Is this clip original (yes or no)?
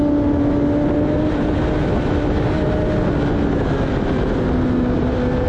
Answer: yes